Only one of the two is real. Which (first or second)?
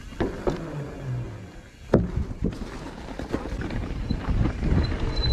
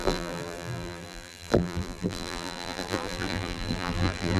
first